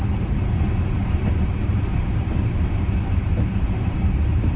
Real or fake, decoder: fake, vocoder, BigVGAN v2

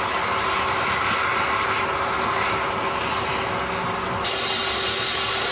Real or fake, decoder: real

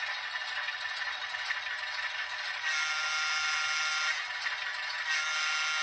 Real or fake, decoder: real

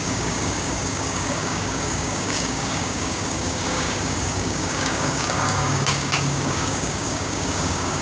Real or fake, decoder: fake, codec, DAC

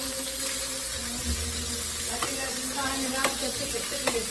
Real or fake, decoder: real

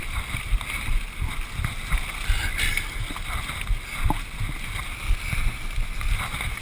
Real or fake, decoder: real